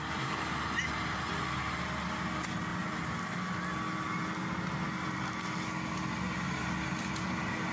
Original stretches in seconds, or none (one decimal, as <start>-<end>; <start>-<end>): 0.0-7.7